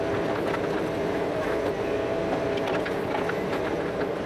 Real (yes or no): yes